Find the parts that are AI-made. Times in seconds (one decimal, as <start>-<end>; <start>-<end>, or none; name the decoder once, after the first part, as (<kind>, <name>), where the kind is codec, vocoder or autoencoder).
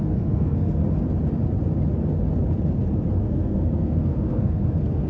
0.0-0.8 (codec, SNAC); 3.2-5.1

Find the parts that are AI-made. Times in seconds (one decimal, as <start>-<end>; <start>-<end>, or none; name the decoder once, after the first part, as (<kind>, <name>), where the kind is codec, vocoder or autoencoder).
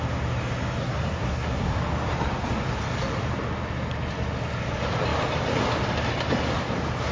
0.8-1.8 (codec, SNAC)